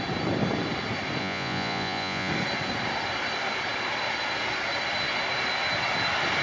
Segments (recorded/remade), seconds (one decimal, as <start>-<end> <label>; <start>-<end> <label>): 0.0-1.2 recorded; 1.2-2.3 remade; 2.3-6.4 recorded